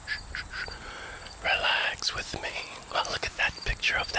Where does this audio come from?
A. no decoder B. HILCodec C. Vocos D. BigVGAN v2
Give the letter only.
A